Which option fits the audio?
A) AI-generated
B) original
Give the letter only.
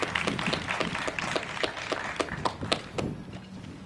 B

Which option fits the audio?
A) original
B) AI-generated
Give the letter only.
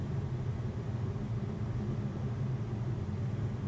A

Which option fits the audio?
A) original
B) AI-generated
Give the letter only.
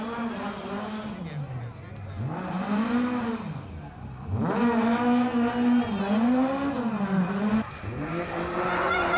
A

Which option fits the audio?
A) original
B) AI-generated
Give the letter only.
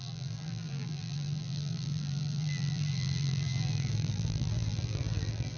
B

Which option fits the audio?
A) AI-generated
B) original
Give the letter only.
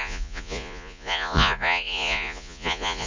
A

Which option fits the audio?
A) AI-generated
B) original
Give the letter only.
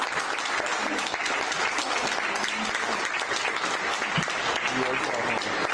B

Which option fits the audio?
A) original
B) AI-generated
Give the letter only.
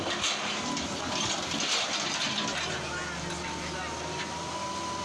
A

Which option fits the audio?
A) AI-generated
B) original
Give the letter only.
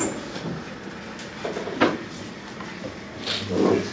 B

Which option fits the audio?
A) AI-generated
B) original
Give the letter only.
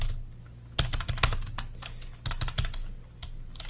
B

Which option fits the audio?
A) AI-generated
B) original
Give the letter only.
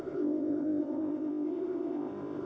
A